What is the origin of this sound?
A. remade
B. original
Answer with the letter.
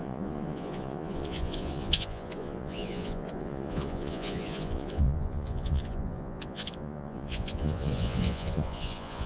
A